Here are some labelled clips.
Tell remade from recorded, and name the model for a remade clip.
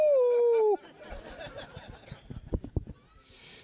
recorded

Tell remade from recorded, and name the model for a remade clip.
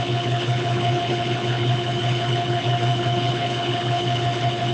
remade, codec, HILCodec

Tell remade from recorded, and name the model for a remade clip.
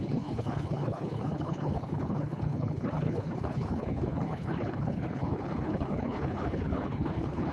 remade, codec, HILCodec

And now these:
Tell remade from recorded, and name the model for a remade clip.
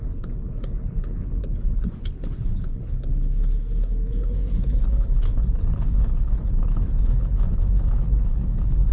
remade, codec, HILCodec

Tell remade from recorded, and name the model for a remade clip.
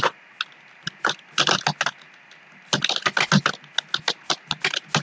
recorded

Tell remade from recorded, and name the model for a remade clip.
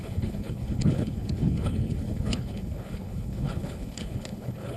remade, codec, HILCodec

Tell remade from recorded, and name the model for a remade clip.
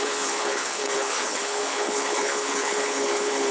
remade, codec, HILCodec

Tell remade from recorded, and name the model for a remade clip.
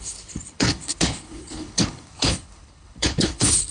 remade, codec, HILCodec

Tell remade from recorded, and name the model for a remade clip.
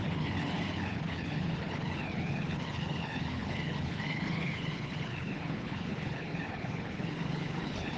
remade, codec, HILCodec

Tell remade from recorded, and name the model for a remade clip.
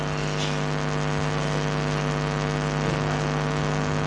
recorded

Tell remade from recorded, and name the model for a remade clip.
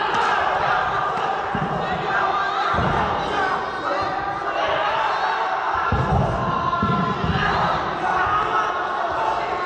recorded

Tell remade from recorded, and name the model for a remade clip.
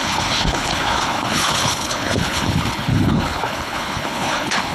remade, codec, HILCodec